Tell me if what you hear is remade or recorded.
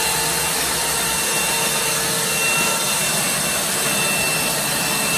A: recorded